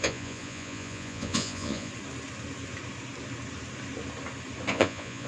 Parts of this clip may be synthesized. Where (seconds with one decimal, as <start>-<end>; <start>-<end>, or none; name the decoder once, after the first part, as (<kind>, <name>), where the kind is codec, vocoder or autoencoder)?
0.0-1.9 (vocoder, Vocos); 4.7-5.3